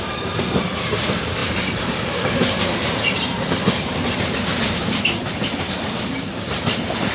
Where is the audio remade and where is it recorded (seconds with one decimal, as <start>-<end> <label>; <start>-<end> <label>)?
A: 0.0-7.1 remade